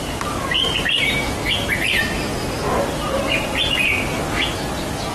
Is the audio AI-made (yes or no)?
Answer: no